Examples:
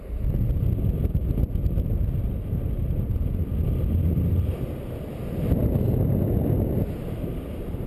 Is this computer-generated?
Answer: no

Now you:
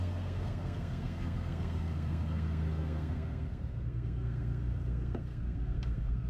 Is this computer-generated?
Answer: yes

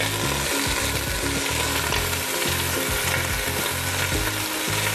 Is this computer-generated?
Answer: no